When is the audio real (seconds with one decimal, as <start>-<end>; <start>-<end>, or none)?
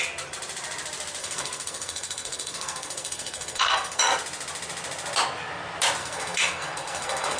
0.0-1.2; 4.0-6.0